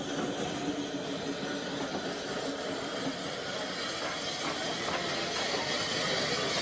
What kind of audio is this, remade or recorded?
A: recorded